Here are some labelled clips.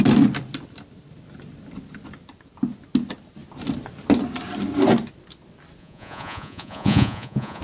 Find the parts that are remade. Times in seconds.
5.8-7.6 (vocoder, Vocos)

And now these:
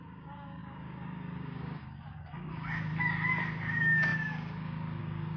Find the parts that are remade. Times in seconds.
0.0-2.9 (codec, DAC); 3.6-5.4

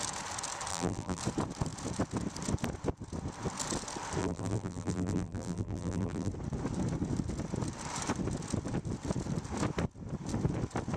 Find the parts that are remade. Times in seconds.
0.7-1.2 (vocoder, BigVGAN v2); 4.2-6.3